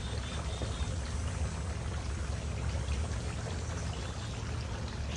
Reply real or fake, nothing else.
real